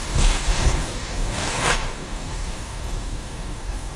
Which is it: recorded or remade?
remade